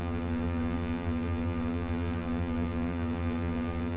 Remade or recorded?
remade